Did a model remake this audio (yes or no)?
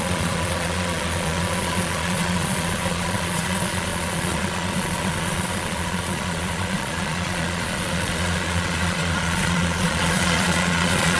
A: yes